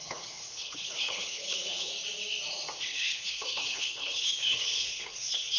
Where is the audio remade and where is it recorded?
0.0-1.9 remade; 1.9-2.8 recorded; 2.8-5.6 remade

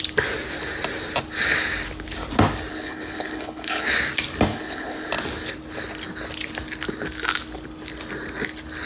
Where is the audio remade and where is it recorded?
0.0-2.7 recorded; 2.7-3.9 remade; 3.9-4.5 recorded; 4.5-5.1 remade; 5.1-8.9 recorded

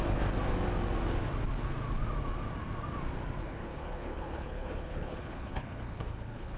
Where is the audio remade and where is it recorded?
0.0-3.4 recorded; 3.4-6.6 remade

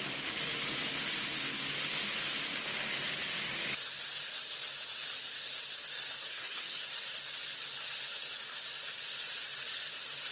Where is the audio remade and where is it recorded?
0.0-6.3 recorded; 6.3-6.8 remade; 6.8-10.3 recorded

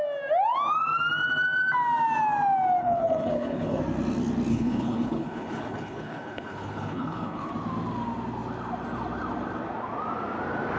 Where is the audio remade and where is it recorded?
0.0-2.8 recorded; 2.8-3.8 remade; 3.8-4.5 recorded; 4.5-7.5 remade; 7.5-10.8 recorded